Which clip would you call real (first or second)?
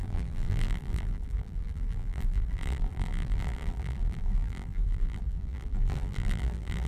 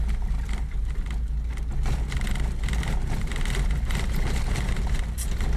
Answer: second